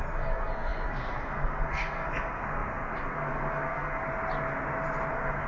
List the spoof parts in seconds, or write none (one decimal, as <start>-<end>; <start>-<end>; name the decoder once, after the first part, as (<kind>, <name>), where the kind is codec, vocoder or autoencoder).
0.0-4.0 (codec, SNAC); 5.1-5.5